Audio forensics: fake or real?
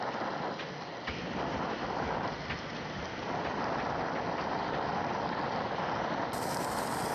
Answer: real